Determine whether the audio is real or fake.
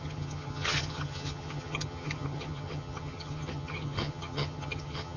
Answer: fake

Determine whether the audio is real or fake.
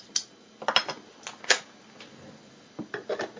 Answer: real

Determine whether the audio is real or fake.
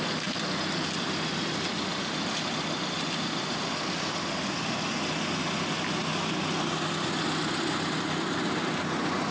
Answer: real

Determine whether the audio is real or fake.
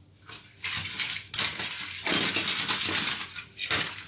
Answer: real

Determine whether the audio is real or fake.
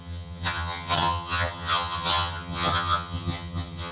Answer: fake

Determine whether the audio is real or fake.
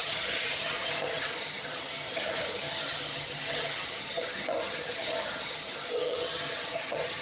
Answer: fake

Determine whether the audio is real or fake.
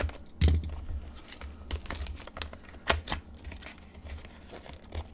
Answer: real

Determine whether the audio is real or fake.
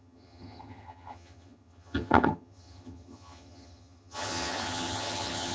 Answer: fake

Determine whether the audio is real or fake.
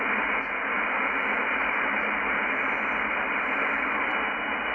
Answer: real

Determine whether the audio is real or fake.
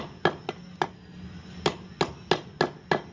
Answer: real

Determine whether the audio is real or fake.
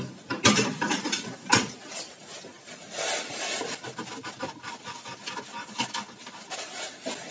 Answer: real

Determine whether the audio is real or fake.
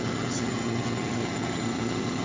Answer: fake